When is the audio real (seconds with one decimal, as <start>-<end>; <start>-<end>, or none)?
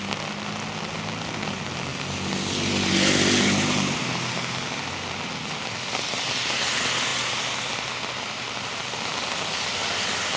0.0-10.4